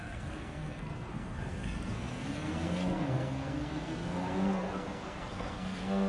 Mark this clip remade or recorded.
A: remade